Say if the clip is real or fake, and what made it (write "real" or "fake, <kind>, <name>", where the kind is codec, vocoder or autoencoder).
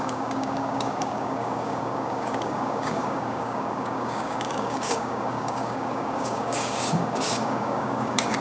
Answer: fake, codec, DAC